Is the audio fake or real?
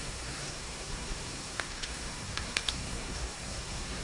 fake